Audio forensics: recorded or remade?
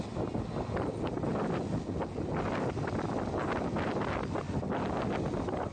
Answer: recorded